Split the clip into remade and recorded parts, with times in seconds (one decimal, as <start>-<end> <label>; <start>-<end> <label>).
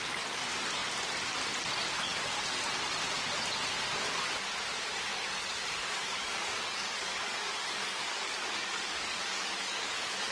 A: 0.0-5.1 recorded; 5.1-10.3 remade